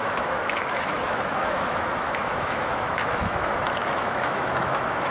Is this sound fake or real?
fake